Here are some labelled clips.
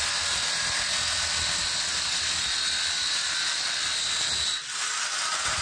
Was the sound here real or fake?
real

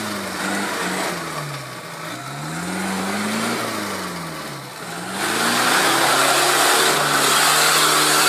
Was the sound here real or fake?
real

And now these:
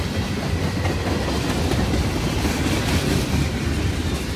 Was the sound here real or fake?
real